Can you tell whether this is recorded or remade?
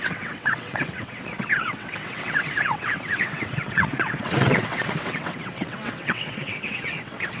remade